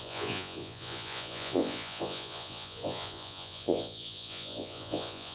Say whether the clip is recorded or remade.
remade